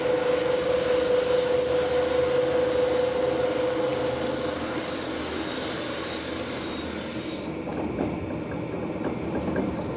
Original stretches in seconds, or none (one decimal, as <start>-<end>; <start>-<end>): 0.0-10.0